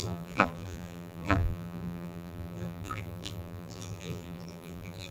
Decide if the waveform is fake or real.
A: fake